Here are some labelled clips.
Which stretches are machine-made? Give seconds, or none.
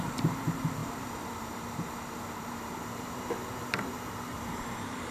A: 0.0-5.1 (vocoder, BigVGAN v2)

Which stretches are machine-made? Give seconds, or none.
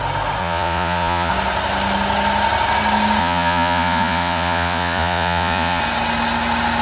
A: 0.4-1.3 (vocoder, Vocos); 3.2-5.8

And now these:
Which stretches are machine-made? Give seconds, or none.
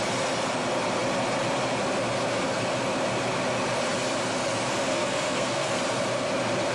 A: 4.9-5.8 (codec, SNAC)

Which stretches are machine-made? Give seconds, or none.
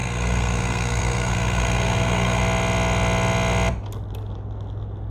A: 0.0-2.4 (codec, SNAC)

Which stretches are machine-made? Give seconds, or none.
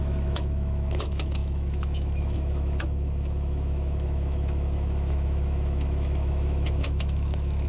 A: 0.0-7.7 (autoencoder, DAC-VAE)